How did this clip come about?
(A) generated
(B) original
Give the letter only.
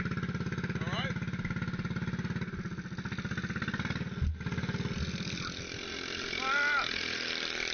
B